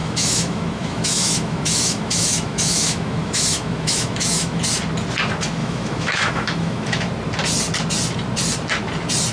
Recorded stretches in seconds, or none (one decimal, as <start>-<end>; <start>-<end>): 4.6-5.6; 7.1-9.3